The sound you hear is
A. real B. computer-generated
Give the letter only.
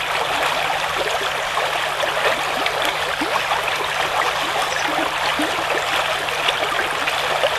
A